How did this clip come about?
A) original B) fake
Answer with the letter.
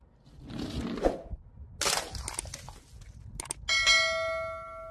A